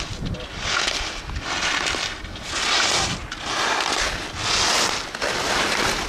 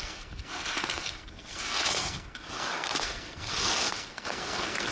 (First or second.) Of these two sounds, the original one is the first